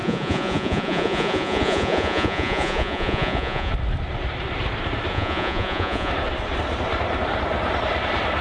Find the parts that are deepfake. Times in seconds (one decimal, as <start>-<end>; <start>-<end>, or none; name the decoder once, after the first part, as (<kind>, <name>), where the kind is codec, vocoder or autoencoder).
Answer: 0.0-3.7 (vocoder, Vocos); 5.1-6.1